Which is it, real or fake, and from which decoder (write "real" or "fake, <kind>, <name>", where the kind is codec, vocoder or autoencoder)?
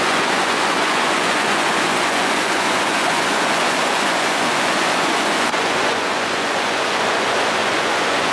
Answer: fake, vocoder, Vocos